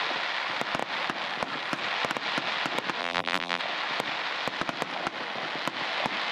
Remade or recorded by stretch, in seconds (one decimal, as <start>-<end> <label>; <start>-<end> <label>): 0.0-3.0 recorded; 3.0-3.6 remade; 3.6-6.3 recorded